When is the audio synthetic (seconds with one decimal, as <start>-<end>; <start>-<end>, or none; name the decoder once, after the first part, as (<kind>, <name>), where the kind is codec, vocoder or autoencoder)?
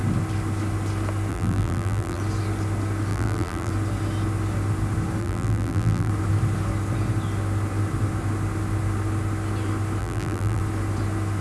1.3-2.2 (vocoder, BigVGAN v2); 3.1-3.7; 5.2-6.1; 10.0-10.6